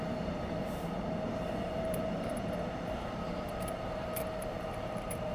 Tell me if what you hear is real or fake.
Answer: fake